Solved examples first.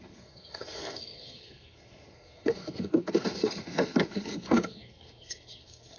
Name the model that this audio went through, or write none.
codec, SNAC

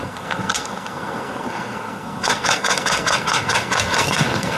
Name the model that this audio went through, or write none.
codec, SNAC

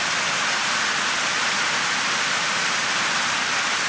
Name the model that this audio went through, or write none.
none